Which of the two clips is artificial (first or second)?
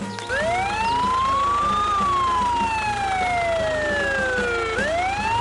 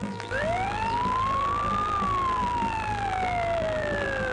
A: second